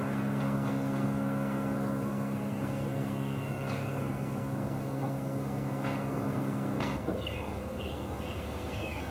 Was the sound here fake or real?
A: fake